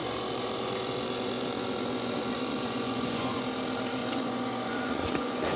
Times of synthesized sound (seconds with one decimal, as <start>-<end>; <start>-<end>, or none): 0.0-3.4; 4.0-5.6